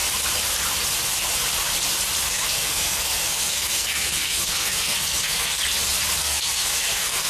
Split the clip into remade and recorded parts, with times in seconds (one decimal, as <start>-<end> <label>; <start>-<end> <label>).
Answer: 0.0-2.3 recorded; 2.3-5.6 remade; 5.6-6.2 recorded; 6.2-7.3 remade

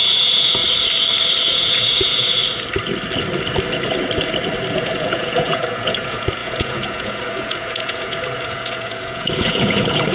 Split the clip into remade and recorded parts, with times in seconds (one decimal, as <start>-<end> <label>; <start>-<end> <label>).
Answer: 0.0-0.6 remade; 0.6-1.4 recorded; 1.4-2.4 remade; 2.4-4.7 recorded; 4.7-10.1 remade

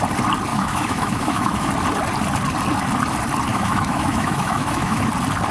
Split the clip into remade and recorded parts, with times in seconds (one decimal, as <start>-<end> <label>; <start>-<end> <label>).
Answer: 0.0-0.5 recorded; 0.5-1.7 remade; 1.7-3.5 recorded; 3.5-5.0 remade; 5.0-5.5 recorded

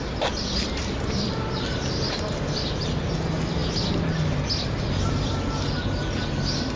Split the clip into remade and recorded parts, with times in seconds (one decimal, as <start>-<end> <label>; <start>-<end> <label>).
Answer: 0.0-6.8 recorded

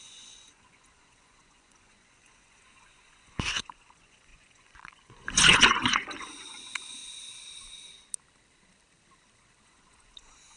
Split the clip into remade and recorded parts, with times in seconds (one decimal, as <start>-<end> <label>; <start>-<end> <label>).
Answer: 0.0-7.0 remade; 7.0-9.6 recorded; 9.6-10.6 remade

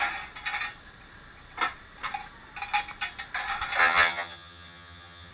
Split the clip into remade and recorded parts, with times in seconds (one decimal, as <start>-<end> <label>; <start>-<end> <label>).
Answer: 0.0-3.8 recorded; 3.8-5.3 remade